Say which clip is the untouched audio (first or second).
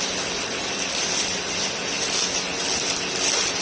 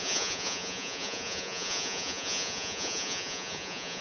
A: first